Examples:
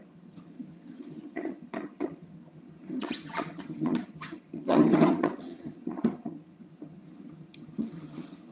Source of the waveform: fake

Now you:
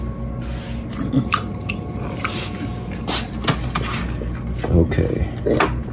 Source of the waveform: real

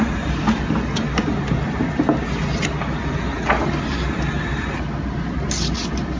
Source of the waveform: real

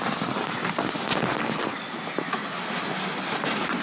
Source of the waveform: real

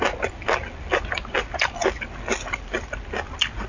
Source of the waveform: real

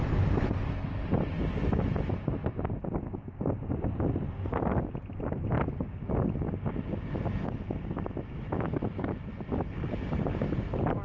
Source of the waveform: real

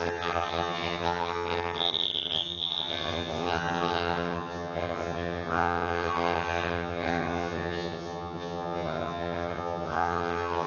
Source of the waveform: fake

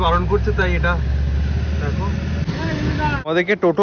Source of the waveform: real